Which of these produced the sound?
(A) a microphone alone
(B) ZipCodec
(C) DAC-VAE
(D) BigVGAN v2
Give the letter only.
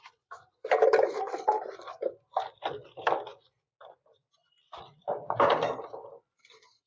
D